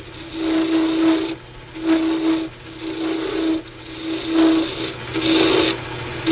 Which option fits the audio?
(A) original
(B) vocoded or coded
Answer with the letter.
A